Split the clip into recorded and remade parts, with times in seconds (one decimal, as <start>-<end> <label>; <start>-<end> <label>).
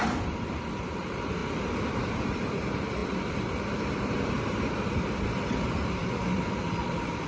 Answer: 0.0-7.3 remade